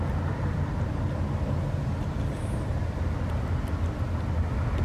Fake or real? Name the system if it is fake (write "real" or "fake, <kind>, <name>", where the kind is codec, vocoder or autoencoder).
real